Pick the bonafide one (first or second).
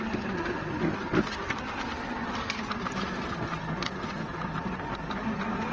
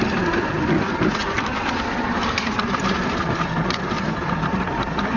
first